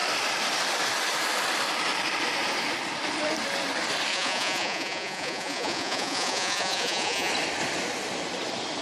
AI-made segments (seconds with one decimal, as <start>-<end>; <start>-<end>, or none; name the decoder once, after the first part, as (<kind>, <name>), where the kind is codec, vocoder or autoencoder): 4.1-7.3 (vocoder, Vocos)